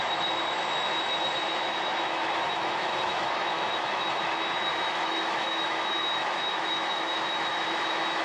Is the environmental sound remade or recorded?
remade